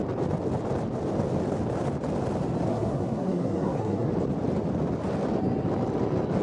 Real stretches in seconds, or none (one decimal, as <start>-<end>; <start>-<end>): 0.0-2.7; 4.1-6.4